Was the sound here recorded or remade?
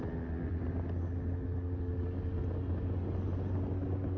recorded